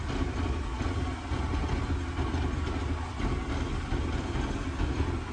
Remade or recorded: recorded